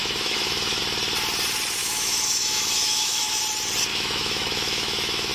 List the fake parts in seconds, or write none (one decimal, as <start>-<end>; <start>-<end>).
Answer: 0.0-0.8; 1.8-3.4; 3.9-5.3